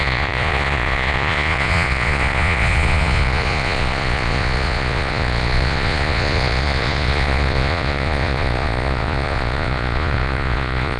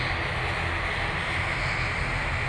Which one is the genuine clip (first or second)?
second